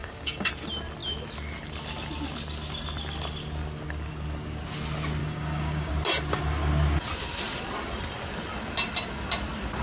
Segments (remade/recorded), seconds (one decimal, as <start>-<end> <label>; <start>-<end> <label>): 0.0-0.5 remade; 0.5-5.2 recorded; 5.2-5.9 remade; 5.9-9.8 recorded